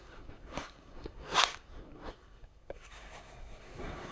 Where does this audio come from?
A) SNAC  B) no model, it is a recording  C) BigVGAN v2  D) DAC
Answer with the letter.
A